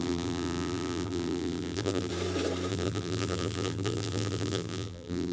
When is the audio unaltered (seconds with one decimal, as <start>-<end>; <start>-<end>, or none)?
2.1-2.7